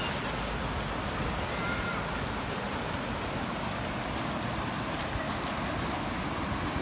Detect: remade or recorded recorded